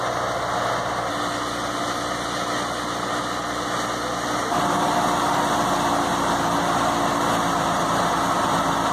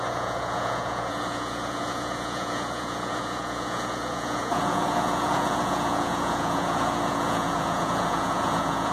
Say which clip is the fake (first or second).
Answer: second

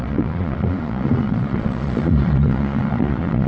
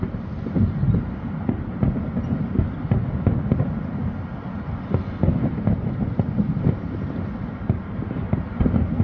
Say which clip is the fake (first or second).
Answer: first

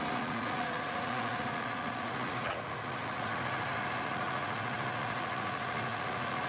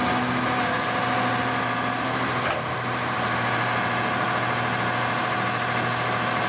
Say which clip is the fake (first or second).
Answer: first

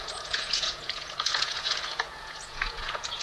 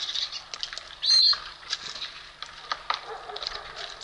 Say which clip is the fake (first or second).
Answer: first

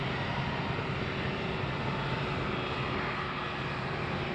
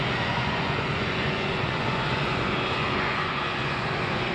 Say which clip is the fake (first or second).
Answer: second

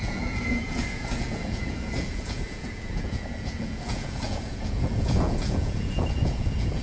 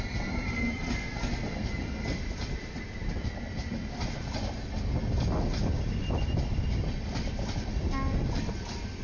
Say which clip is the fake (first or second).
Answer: first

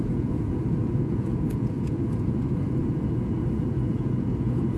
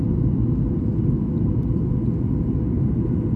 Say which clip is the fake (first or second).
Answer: first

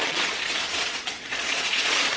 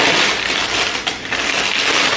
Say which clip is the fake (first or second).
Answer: first